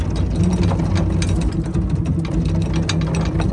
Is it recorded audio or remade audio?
recorded